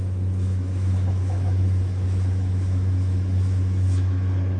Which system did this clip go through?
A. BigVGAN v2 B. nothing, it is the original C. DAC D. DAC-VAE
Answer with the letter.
D